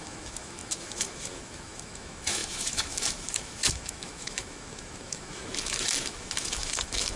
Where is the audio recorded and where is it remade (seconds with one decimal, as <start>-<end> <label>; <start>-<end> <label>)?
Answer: 0.0-7.2 remade